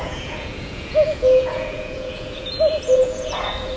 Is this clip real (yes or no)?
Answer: no